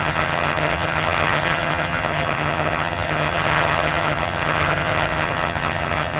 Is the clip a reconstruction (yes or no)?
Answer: yes